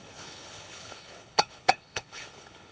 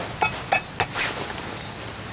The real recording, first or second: second